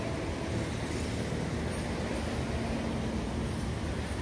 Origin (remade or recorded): recorded